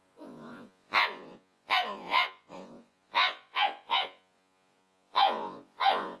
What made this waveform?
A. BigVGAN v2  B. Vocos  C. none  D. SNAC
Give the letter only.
B